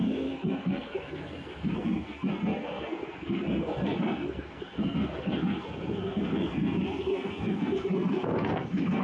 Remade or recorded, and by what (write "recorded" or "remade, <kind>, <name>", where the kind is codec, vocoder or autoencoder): remade, codec, SNAC